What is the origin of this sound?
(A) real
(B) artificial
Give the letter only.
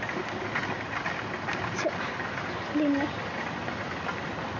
A